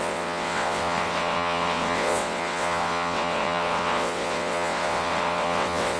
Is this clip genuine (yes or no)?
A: no